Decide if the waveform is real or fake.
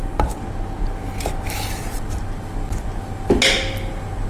real